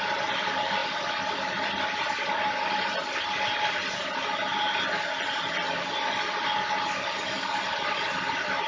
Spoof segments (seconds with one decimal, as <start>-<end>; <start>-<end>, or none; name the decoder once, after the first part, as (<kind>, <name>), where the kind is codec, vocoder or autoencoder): none